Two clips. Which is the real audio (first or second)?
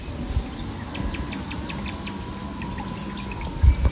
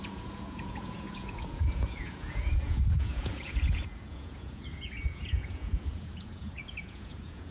first